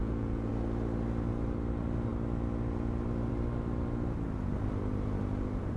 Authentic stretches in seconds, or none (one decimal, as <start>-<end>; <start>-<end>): 0.5-5.8